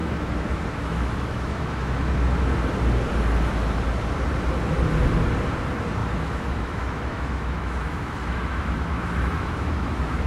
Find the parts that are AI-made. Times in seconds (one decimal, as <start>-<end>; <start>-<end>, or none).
0.0-2.5; 6.0-10.3

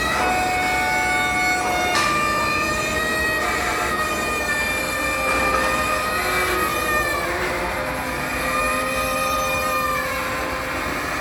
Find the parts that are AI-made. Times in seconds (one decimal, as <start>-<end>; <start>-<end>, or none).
none

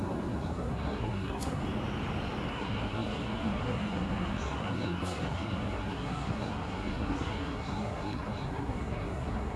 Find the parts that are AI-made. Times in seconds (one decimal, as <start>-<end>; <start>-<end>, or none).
0.0-1.6; 2.5-9.6

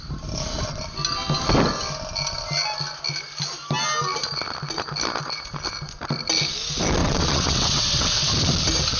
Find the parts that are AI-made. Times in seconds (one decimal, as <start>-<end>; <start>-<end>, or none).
7.0-8.3

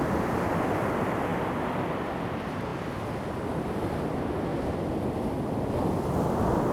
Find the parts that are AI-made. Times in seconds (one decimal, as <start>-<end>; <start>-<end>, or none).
0.0-2.7; 3.3-4.5; 6.2-6.7

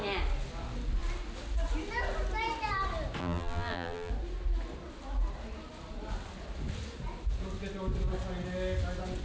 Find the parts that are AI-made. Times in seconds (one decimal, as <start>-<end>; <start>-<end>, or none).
3.2-4.1